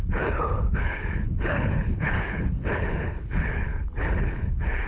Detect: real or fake fake